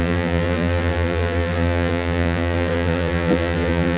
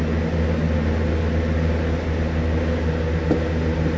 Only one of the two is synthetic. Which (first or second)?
first